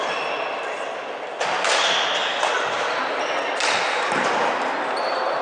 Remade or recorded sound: recorded